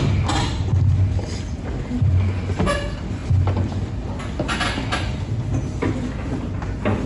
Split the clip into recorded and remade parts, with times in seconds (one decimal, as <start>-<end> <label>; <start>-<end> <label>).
0.0-7.1 recorded

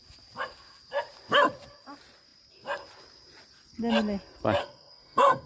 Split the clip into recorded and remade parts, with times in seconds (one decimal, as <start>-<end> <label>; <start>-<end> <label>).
0.0-4.6 recorded; 4.6-5.5 remade